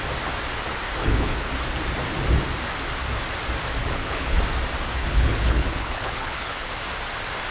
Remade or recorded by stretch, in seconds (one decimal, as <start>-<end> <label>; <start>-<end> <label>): 0.0-1.0 recorded; 1.0-1.5 remade; 1.5-3.8 recorded; 3.8-4.4 remade; 4.4-5.0 recorded; 5.0-6.7 remade; 6.7-7.5 recorded